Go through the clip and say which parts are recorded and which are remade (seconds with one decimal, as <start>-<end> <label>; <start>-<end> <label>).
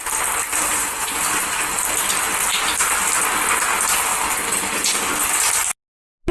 0.0-0.7 recorded; 0.7-1.2 remade; 1.2-6.3 recorded